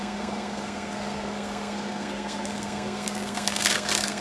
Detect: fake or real fake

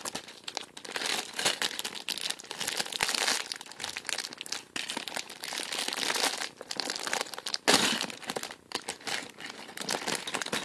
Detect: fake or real real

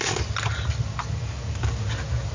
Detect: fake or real real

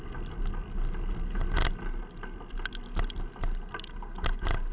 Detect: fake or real real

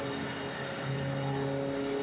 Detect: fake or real real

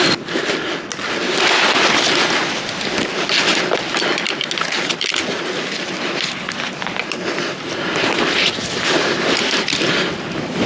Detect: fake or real real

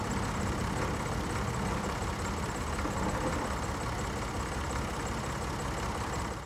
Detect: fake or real real